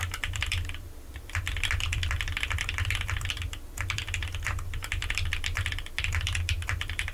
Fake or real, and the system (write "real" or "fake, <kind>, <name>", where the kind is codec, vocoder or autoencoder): fake, vocoder, BigVGAN v2